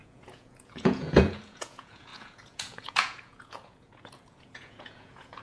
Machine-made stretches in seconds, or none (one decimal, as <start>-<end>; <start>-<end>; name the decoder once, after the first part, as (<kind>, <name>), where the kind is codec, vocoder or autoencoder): 0.0-5.4 (vocoder, Vocos)